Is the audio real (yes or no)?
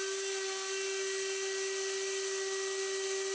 yes